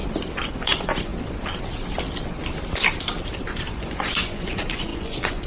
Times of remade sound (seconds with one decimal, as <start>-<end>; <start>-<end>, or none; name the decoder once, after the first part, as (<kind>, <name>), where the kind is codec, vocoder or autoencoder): 0.5-1.1 (vocoder, Vocos); 3.7-5.5